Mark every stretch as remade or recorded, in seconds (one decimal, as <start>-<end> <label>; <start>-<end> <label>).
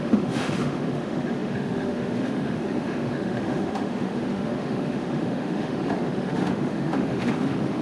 0.0-7.8 remade